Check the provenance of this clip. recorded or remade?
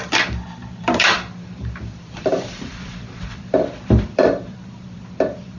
remade